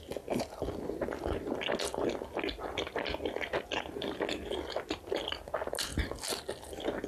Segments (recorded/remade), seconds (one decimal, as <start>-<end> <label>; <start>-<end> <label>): 0.0-7.1 recorded